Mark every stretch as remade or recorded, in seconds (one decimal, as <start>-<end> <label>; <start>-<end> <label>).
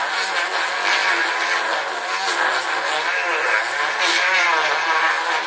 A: 0.0-5.5 recorded